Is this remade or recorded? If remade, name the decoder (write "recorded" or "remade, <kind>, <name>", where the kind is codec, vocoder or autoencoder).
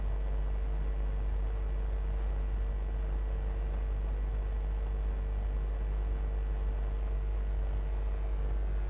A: recorded